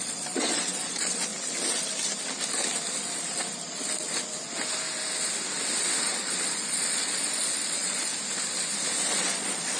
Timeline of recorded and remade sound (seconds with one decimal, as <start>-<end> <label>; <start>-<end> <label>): 0.0-1.3 remade; 1.3-6.0 recorded; 6.0-8.1 remade; 8.1-9.2 recorded; 9.2-9.8 remade